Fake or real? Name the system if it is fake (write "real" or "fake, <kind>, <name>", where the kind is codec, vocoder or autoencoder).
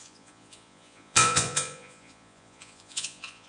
fake, vocoder, Vocos